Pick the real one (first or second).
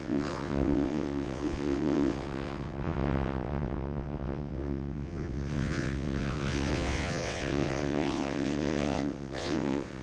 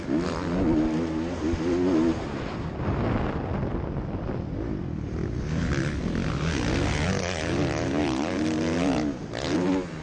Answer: second